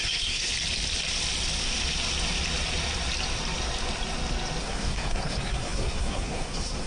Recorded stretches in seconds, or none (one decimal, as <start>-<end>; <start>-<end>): 0.5-4.6